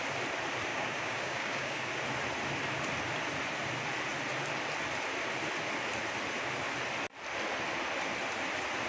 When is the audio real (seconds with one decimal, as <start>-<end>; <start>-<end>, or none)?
0.0-0.7; 1.9-8.9